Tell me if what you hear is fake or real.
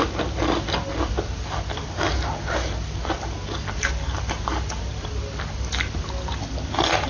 real